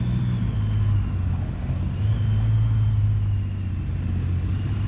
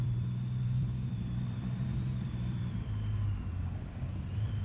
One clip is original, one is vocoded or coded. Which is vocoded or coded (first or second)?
second